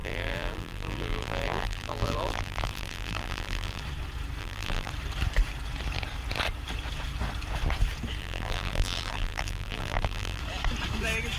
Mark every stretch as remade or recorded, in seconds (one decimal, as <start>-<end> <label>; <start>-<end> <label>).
0.0-3.8 remade; 3.8-4.4 recorded; 4.4-4.9 remade; 4.9-8.2 recorded; 8.2-10.4 remade; 10.4-11.4 recorded